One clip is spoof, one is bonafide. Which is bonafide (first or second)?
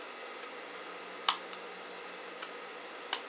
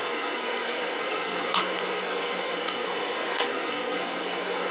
first